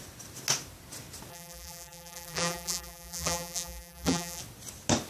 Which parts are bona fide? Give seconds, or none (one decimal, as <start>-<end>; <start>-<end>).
0.0-1.3; 4.4-5.1

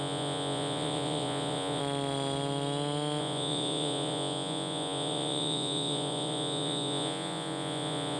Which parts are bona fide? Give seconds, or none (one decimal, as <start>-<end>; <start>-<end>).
1.8-3.2

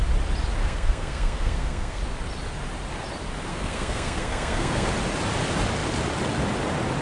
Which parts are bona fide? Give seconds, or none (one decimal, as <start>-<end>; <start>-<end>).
0.0-0.6; 2.0-3.5; 4.9-7.0

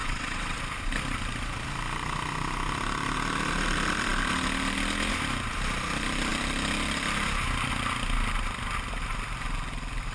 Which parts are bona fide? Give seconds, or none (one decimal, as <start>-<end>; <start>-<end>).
0.6-10.1

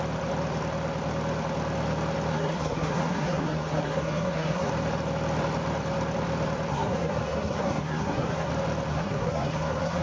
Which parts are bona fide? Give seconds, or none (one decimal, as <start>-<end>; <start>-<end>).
0.0-2.3; 4.7-6.7; 8.5-8.9

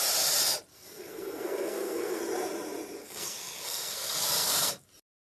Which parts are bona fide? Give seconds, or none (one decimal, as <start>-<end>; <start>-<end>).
0.0-0.7; 2.2-3.0; 4.7-5.4

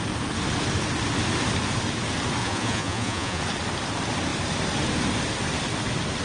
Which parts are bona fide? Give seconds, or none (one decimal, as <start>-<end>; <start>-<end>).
0.0-2.4; 3.4-6.2